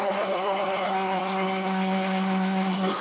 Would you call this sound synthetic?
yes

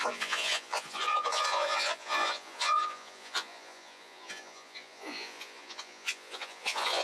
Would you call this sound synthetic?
yes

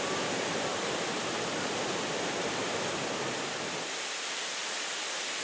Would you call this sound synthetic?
yes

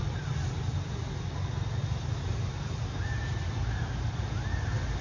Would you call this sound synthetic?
no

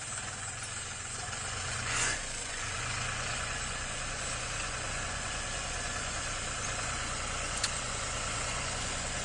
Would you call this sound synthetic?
yes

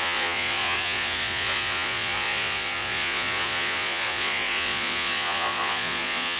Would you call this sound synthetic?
yes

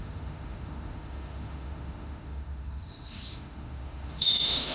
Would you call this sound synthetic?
yes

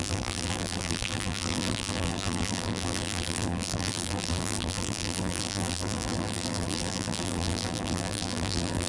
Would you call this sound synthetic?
yes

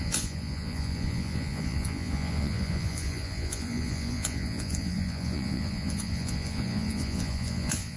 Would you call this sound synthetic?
yes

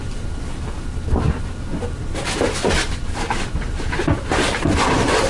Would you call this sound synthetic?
no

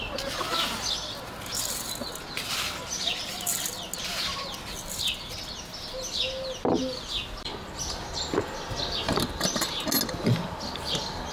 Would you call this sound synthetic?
no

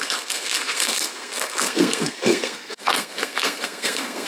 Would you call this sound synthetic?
yes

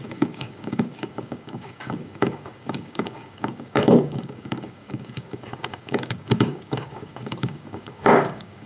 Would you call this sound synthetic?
yes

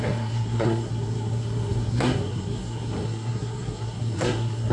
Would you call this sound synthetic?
yes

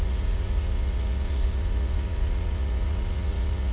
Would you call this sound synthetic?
yes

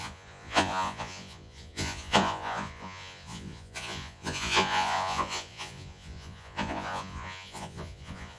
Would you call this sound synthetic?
yes